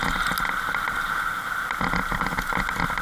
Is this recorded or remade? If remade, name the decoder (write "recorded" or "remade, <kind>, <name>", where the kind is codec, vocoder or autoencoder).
recorded